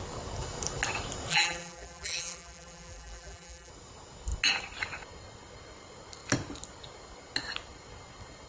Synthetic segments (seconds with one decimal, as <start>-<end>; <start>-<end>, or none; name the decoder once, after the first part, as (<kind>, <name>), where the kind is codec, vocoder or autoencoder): 1.3-3.7 (vocoder, BigVGAN v2)